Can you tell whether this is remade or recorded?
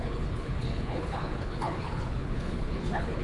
remade